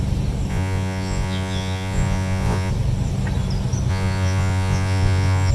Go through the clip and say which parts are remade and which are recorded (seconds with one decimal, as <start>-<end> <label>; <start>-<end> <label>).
0.0-0.5 recorded; 0.5-2.7 remade; 2.7-3.9 recorded; 3.9-5.5 remade